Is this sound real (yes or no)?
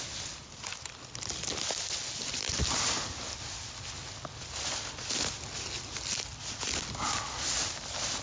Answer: yes